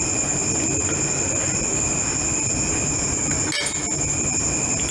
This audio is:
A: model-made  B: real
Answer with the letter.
B